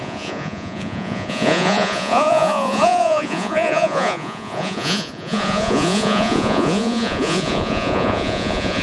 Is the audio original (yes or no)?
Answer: no